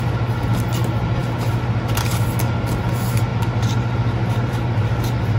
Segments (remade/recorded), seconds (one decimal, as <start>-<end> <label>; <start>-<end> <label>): 0.0-5.4 recorded